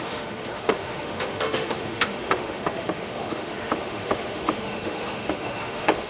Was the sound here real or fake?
fake